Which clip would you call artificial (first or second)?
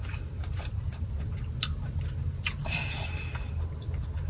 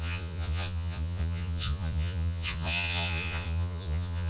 second